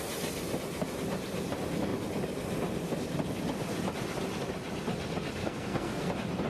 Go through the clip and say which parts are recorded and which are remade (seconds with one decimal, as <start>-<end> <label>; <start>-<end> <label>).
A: 0.0-5.4 recorded; 5.4-6.1 remade; 6.1-6.5 recorded